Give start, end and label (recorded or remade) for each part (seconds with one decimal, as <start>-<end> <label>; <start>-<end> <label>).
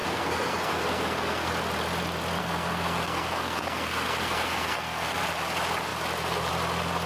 0.0-1.5 remade; 1.5-2.4 recorded; 2.4-5.2 remade; 5.2-7.1 recorded